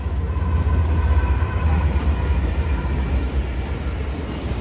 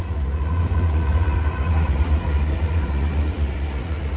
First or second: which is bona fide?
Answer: first